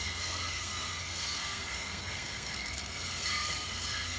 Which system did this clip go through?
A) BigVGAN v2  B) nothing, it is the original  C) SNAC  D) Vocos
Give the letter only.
C